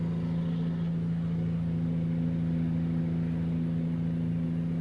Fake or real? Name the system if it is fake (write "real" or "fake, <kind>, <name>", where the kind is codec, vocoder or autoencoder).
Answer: real